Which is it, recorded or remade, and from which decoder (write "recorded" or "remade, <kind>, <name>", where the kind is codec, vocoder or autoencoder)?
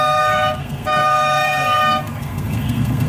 remade, codec, SNAC